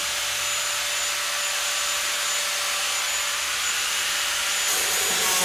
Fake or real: real